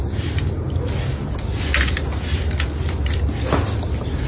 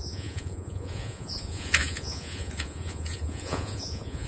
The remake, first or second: second